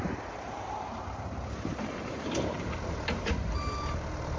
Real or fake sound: fake